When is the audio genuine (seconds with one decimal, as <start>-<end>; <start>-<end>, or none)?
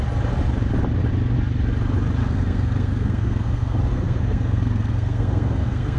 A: 0.0-2.2